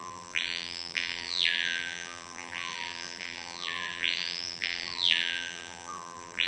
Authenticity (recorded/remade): remade